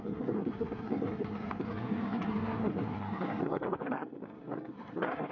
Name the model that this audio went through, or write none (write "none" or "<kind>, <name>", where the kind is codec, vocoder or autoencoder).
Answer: codec, SNAC